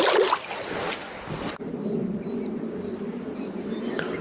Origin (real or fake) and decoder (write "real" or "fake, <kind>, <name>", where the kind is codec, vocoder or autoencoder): real